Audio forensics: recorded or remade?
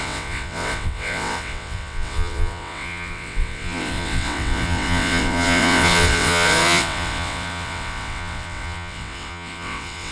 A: remade